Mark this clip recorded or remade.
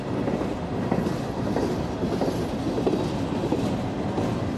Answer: recorded